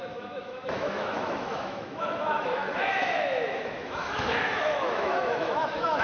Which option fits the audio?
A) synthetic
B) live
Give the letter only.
A